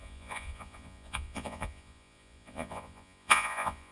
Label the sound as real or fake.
fake